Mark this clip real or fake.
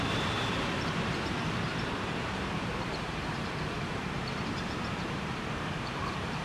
fake